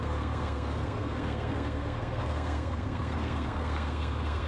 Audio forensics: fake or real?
fake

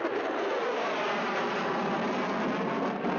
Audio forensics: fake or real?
real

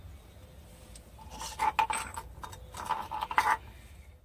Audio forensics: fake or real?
real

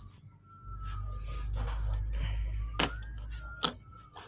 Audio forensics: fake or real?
real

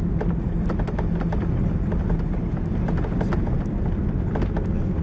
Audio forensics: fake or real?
real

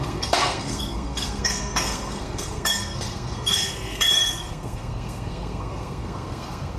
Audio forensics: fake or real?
fake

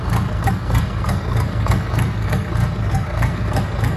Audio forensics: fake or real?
fake